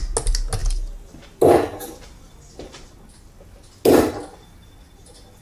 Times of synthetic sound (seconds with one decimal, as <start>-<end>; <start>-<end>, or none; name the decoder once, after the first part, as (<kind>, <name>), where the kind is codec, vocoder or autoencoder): 0.6-1.2 (vocoder, BigVGAN v2)